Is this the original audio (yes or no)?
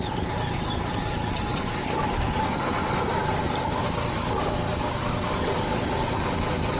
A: yes